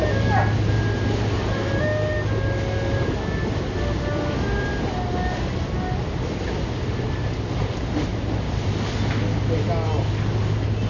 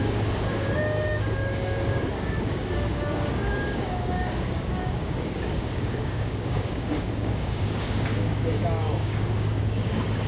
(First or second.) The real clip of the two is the first